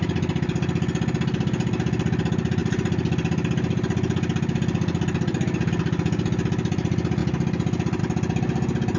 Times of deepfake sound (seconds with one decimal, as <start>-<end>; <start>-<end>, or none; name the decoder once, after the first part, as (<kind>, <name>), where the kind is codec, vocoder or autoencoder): none